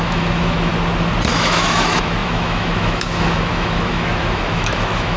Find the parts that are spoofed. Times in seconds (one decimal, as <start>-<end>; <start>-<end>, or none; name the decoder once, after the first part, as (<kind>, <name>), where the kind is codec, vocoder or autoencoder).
0.0-0.7 (autoencoder, DAC-VAE); 1.3-5.2